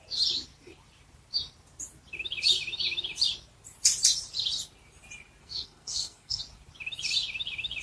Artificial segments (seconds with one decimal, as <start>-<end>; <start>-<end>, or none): 5.4-6.4